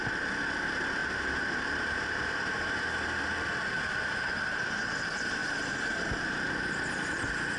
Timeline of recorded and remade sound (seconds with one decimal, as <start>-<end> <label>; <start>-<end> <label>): 0.0-1.0 recorded; 1.0-2.4 remade; 2.4-5.4 recorded; 5.4-6.0 remade; 6.0-7.6 recorded